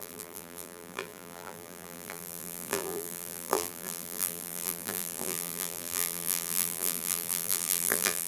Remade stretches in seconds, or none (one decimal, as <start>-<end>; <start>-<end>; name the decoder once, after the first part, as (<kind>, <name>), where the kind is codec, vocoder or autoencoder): 0.0-8.3 (vocoder, BigVGAN v2)